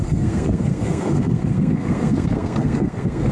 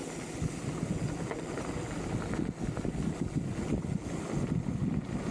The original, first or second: second